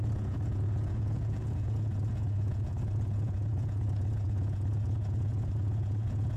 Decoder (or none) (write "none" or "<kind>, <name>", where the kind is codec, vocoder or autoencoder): vocoder, Vocos